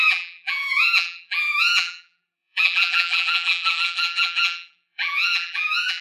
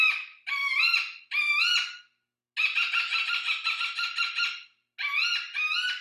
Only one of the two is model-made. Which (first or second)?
first